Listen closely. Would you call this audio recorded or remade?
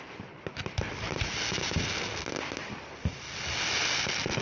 recorded